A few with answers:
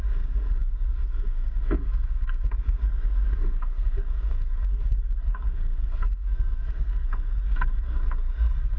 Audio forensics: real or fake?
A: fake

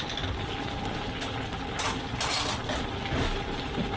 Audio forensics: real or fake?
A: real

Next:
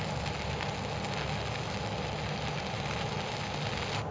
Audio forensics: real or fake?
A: real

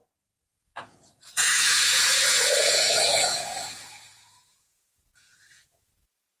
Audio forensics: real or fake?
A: fake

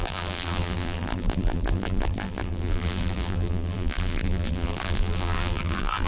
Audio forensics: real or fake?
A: fake